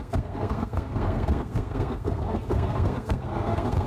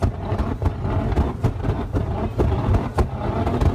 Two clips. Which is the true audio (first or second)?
second